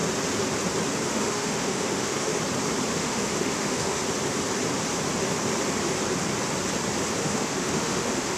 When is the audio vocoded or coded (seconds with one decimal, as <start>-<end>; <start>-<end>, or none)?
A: 1.1-2.3; 2.9-4.0; 7.2-8.4